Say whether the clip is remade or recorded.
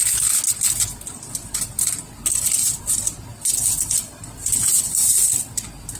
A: recorded